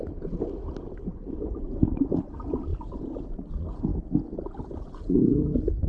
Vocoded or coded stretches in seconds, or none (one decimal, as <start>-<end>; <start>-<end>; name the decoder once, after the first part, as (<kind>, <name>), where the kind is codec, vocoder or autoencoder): 2.7-3.5 (vocoder, BigVGAN v2)